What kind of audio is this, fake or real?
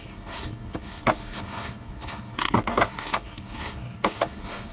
fake